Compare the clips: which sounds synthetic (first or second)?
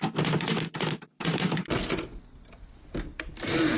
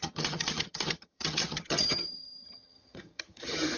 second